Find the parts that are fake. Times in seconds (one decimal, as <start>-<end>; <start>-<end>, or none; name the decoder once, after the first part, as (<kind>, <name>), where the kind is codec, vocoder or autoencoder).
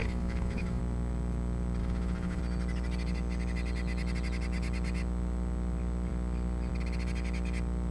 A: 0.0-0.8 (autoencoder, DAC-VAE); 1.8-2.4